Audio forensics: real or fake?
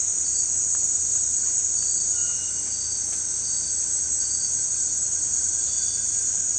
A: real